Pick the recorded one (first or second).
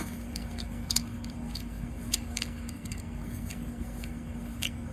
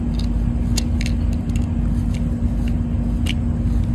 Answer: second